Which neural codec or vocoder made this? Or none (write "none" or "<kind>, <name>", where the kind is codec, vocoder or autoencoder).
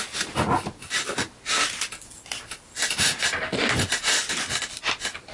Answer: none